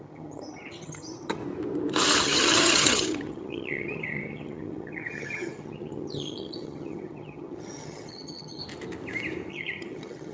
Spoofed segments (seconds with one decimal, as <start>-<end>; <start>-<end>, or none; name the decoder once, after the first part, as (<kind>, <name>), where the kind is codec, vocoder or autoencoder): 0.0-1.4 (vocoder, HiFi-GAN); 2.2-8.6; 9.5-10.3